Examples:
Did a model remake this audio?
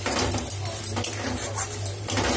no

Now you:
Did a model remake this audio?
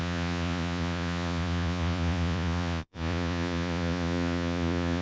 yes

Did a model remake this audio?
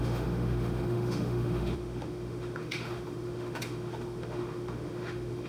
yes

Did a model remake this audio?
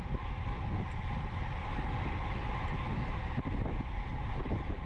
no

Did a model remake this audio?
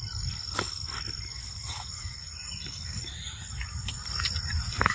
no